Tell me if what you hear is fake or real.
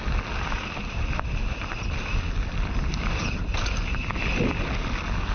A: real